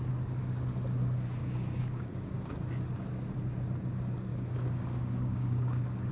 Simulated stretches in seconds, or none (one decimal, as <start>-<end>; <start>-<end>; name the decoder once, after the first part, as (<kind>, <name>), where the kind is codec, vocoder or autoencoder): 1.4-2.5 (codec, DAC); 4.3-6.1